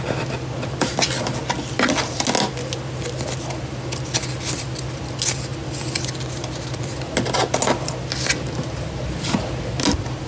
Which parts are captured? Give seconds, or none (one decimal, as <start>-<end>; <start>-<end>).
0.0-10.3